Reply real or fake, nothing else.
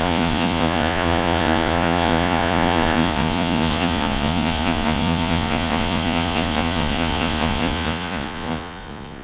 fake